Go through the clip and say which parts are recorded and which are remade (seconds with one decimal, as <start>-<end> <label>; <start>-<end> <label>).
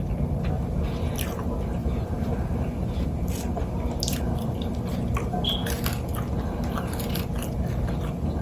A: 0.0-1.8 recorded; 1.8-3.1 remade; 3.1-8.4 recorded